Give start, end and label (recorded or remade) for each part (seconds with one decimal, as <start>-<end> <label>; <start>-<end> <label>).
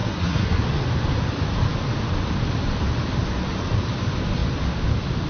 0.0-0.6 remade; 0.6-5.3 recorded